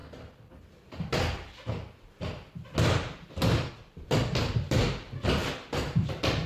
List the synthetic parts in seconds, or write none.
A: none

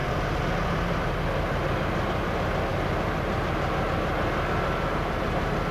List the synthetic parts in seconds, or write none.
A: 0.0-1.1 (vocoder, BigVGAN v2)

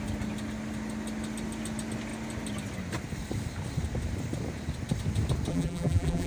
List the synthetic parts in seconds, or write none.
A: 5.5-6.3 (vocoder, BigVGAN v2)

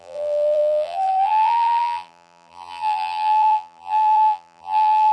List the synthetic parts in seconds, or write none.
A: 0.0-5.1 (vocoder, BigVGAN v2)

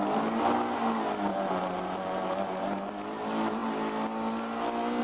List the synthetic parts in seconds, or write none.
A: 1.3-2.9 (vocoder, BigVGAN v2)

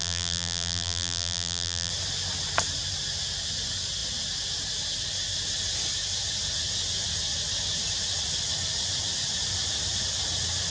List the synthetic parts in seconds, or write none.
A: 0.0-1.9 (vocoder, BigVGAN v2)